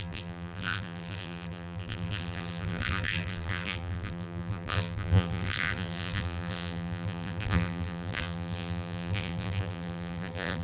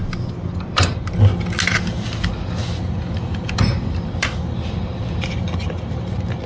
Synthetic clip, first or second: first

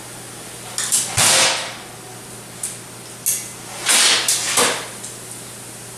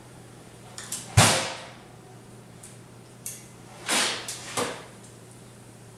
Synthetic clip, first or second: second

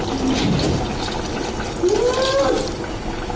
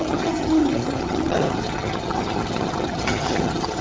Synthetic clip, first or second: second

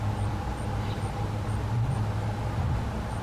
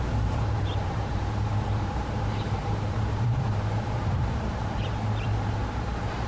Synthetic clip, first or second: second